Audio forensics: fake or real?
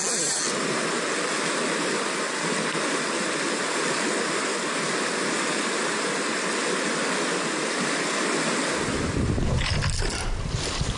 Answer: real